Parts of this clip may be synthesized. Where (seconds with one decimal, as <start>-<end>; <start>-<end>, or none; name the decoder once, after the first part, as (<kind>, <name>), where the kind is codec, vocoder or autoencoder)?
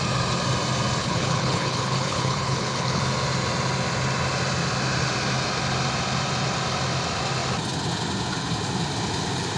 1.0-3.0 (codec, HILCodec)